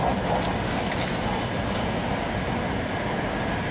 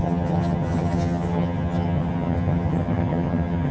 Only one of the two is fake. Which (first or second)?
second